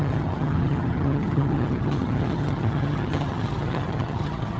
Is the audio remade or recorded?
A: remade